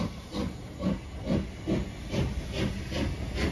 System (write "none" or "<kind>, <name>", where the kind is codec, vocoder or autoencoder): none